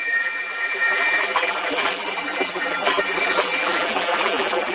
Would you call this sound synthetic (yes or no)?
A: yes